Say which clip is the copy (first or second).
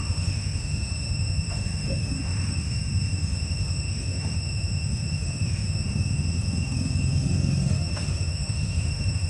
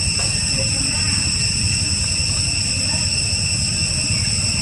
first